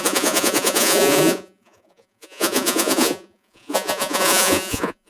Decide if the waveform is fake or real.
fake